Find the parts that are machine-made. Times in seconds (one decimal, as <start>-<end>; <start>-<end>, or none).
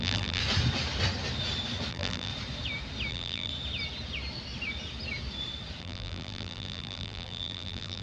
0.0-0.4; 1.9-2.3; 3.1-3.5; 5.8-8.0